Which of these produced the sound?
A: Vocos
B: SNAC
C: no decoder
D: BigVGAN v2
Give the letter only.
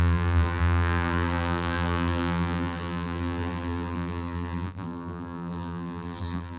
D